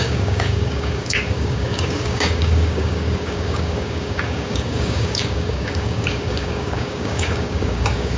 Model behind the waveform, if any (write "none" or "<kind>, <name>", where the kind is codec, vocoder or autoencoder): codec, DAC